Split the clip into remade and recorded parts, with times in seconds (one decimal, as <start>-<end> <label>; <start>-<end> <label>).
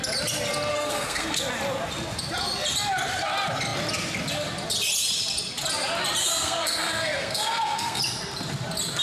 0.0-0.7 recorded; 0.7-1.4 remade; 1.4-6.2 recorded; 6.2-8.0 remade; 8.0-9.0 recorded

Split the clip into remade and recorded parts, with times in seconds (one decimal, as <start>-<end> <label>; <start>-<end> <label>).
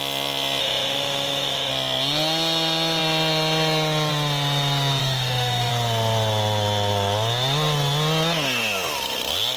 0.0-0.6 recorded; 0.6-1.7 remade; 1.7-5.0 recorded; 5.0-5.7 remade; 5.7-9.6 recorded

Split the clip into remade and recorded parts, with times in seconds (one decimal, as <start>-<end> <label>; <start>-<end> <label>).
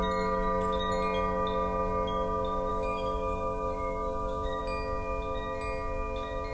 0.0-2.7 recorded; 2.7-4.6 remade; 4.6-6.5 recorded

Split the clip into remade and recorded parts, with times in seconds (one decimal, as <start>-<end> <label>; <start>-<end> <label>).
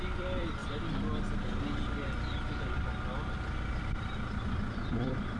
0.0-0.6 remade; 0.6-3.8 recorded; 3.8-5.4 remade